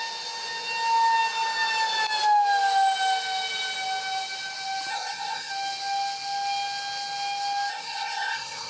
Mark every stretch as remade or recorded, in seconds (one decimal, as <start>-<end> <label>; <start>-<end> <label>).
0.0-4.9 recorded; 4.9-5.5 remade; 5.5-7.7 recorded; 7.7-8.7 remade